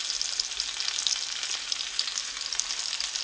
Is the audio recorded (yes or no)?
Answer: yes